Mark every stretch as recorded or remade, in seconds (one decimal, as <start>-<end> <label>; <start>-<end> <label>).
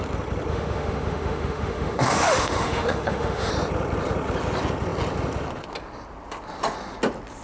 0.0-0.5 recorded; 0.5-3.5 remade; 3.5-7.4 recorded